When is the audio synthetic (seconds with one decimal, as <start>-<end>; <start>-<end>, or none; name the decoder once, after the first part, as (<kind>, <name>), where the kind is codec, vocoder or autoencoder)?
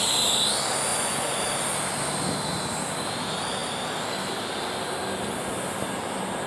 0.9-1.4 (vocoder, Vocos)